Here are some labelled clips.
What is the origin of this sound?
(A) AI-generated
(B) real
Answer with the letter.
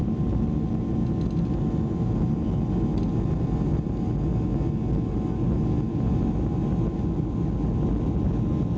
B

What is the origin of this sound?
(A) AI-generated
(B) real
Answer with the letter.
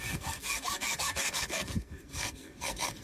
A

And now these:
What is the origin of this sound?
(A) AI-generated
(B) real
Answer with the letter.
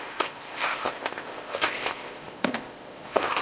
A